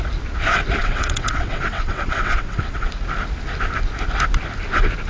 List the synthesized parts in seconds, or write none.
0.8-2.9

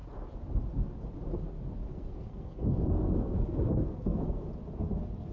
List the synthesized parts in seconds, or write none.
1.9-4.5

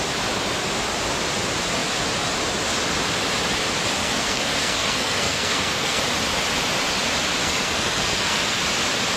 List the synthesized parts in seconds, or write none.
4.0-6.0; 7.4-8.6

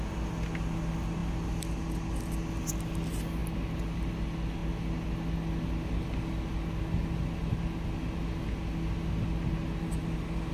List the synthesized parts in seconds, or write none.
none

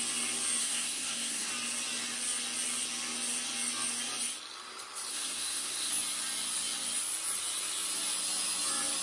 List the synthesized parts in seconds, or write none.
0.6-1.5; 5.1-5.9

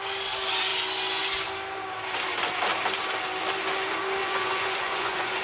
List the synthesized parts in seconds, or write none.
4.2-5.4

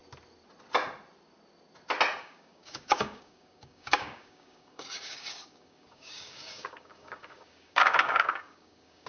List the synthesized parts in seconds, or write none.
2.2-9.1

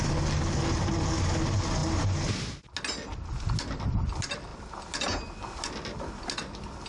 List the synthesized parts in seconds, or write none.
none